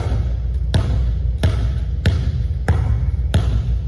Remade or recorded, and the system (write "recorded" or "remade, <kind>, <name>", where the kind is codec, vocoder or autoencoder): recorded